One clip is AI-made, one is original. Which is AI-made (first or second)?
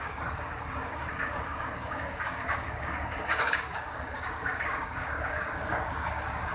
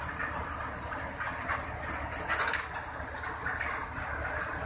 first